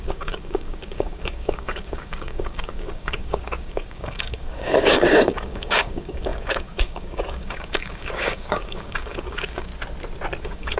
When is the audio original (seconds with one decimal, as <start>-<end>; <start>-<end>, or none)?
9.7-10.4